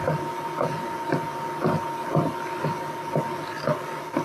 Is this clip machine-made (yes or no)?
no